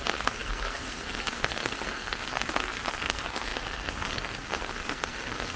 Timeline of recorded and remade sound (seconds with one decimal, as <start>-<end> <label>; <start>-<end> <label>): 0.0-5.6 remade